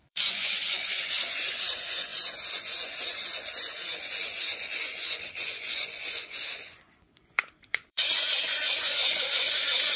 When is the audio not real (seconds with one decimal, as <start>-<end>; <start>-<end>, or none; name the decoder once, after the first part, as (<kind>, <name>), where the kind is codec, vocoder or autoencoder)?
0.0-10.0 (vocoder, Vocos)